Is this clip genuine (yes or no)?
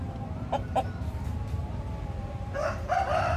no